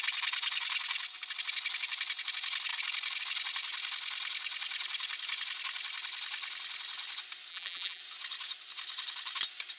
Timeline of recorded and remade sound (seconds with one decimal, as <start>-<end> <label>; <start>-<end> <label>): 0.0-7.5 recorded; 7.5-8.0 remade; 8.0-9.8 recorded